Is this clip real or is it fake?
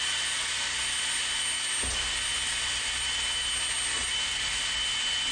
real